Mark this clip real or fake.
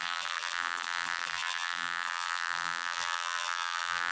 fake